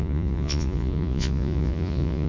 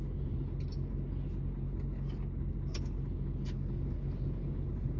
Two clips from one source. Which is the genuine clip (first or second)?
second